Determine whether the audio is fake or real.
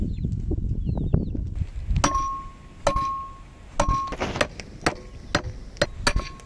real